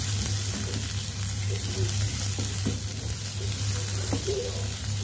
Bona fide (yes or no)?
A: yes